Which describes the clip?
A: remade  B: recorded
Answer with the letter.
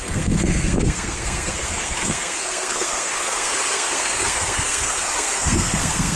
A